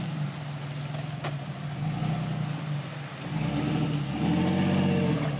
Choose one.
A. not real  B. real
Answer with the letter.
B